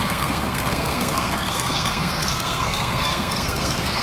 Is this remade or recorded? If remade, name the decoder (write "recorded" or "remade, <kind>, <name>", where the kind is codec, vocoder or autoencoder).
remade, codec, SNAC